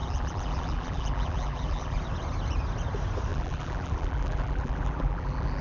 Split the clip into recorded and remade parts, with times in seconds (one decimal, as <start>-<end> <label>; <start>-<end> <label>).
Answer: 0.0-2.0 remade; 2.0-3.3 recorded; 3.3-5.6 remade